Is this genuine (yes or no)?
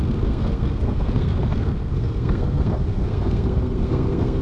no